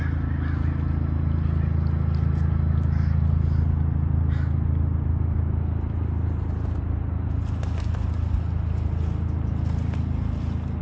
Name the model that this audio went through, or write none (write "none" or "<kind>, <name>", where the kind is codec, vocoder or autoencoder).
none